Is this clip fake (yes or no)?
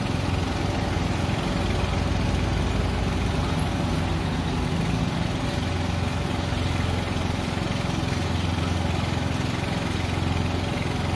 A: no